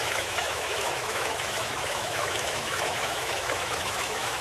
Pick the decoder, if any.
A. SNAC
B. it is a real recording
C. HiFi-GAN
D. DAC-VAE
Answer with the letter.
D